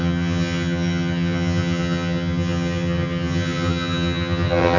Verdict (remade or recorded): remade